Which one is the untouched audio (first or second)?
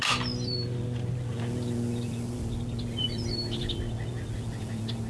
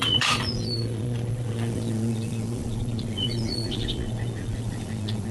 first